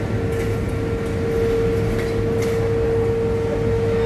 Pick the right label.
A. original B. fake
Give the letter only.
A